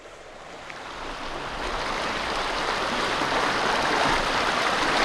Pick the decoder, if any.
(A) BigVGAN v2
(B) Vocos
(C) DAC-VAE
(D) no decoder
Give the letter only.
D